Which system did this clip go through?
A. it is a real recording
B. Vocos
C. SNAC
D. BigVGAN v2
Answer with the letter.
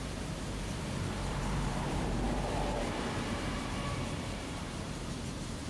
D